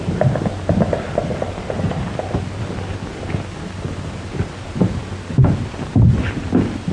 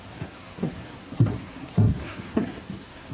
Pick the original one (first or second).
first